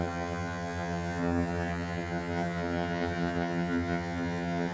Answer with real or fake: fake